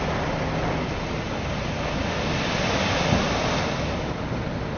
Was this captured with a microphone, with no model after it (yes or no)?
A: yes